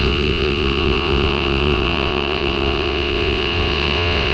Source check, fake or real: fake